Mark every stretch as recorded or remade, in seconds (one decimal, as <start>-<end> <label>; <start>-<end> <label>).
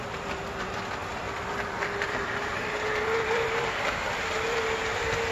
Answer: 0.0-1.0 recorded; 1.0-4.2 remade; 4.2-5.3 recorded